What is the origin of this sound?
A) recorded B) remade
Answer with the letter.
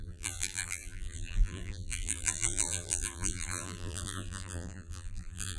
B